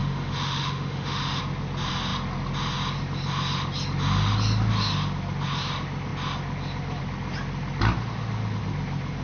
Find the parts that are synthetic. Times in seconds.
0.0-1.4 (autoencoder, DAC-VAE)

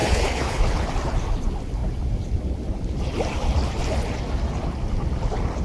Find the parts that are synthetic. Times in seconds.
0.0-0.8 (codec, HILCodec)

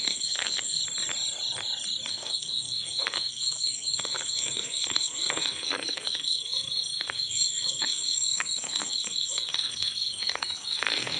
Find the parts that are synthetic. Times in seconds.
0.0-0.8 (codec, SNAC); 2.1-11.2

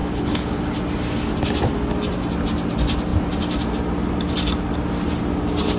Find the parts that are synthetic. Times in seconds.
0.0-0.6 (codec, HILCodec)

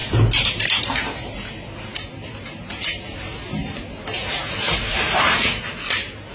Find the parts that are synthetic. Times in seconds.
none

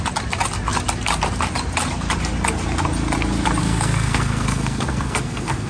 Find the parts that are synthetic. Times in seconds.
3.6-5.7 (codec, SNAC)